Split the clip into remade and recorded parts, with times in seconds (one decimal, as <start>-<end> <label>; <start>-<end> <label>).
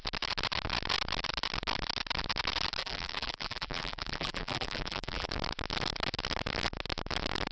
0.0-2.8 recorded; 2.8-5.3 remade; 5.3-7.5 recorded